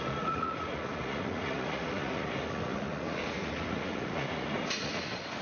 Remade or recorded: remade